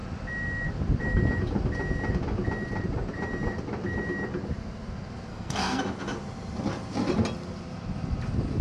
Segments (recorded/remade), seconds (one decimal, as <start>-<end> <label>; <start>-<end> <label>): 0.0-5.3 recorded; 5.3-5.8 remade; 5.8-8.6 recorded